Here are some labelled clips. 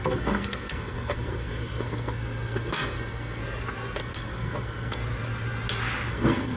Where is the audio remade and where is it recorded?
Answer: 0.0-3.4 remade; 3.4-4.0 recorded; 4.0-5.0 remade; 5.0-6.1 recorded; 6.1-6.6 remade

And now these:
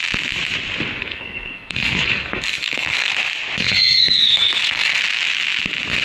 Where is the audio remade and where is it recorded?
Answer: 0.0-1.0 recorded; 1.0-3.1 remade; 3.1-3.6 recorded; 3.6-5.0 remade; 5.0-6.0 recorded